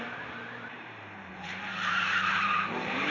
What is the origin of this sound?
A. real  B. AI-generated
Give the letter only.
B